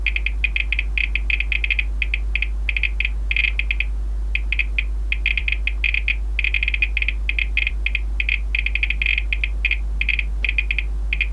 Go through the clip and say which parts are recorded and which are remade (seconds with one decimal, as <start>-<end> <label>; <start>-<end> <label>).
0.0-11.3 recorded